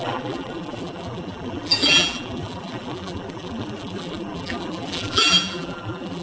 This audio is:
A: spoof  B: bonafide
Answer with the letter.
A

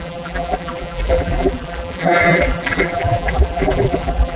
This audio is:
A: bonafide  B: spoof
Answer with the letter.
B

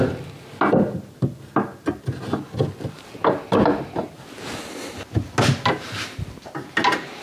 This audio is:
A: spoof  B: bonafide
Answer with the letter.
B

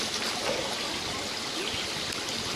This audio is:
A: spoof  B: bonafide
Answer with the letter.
B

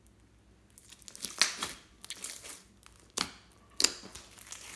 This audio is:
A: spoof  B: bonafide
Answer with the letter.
B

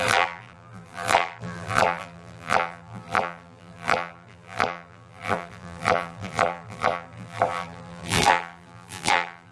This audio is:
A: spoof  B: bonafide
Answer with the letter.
A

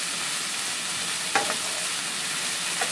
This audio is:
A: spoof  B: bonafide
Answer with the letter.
B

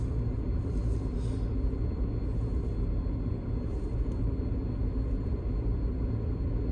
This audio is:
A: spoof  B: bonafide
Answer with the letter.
B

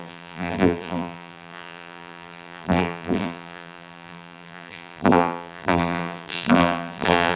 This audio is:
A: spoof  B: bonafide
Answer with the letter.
A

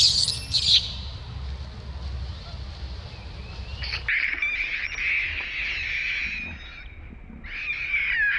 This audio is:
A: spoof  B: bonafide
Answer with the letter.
B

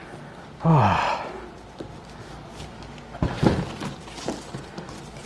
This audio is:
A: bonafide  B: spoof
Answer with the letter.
A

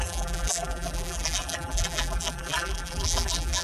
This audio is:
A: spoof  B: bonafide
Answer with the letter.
A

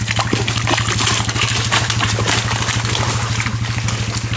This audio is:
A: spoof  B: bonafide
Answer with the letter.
B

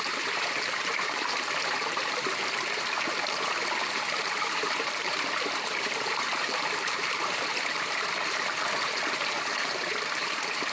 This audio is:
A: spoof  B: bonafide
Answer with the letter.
A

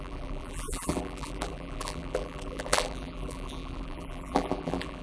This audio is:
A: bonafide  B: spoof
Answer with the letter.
B